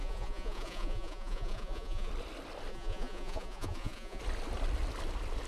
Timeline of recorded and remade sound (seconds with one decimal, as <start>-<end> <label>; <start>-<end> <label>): 0.0-2.1 remade; 2.1-2.7 recorded; 2.7-4.2 remade; 4.2-5.5 recorded

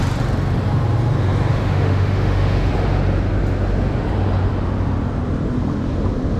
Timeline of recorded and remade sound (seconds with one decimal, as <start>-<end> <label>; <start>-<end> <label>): 0.0-1.5 recorded; 1.5-2.7 remade; 2.7-6.4 recorded

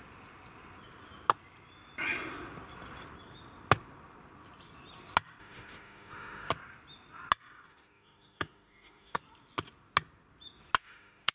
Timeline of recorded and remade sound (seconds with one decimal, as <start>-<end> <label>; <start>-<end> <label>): 0.0-5.4 recorded; 5.4-6.5 remade; 6.5-7.7 recorded; 7.7-9.2 remade; 9.2-10.8 recorded; 10.8-11.3 remade

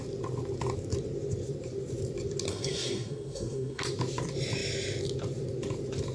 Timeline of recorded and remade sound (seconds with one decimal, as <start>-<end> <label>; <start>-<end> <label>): 0.0-2.5 recorded; 2.5-3.8 remade; 3.8-6.1 recorded

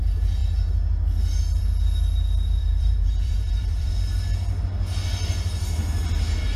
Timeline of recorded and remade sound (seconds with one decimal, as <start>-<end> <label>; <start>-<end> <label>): 0.0-2.6 recorded; 2.6-3.9 remade; 3.9-6.6 recorded

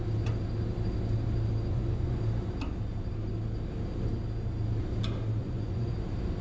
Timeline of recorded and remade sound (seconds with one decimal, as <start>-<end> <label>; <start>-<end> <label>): 0.0-1.7 recorded; 1.7-2.2 remade; 2.2-5.4 recorded; 5.4-5.9 remade; 5.9-6.4 recorded

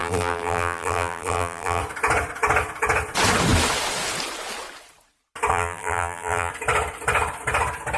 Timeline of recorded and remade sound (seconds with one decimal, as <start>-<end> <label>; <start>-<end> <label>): 0.0-1.8 remade; 1.8-5.5 recorded; 5.5-6.5 remade; 6.5-8.0 recorded

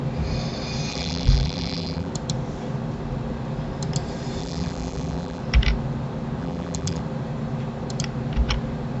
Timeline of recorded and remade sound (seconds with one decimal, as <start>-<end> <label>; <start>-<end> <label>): 0.0-0.9 recorded; 0.9-2.1 remade; 2.1-4.4 recorded; 4.4-5.4 remade; 5.4-6.4 recorded; 6.4-7.0 remade; 7.0-9.0 recorded